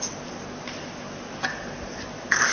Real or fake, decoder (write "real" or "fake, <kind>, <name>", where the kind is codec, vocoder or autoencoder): real